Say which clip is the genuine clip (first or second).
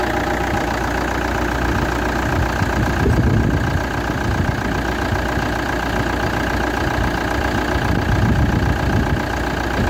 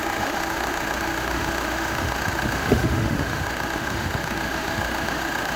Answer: first